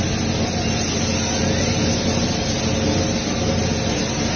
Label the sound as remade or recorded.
recorded